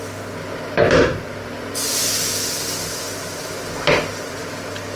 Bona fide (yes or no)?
yes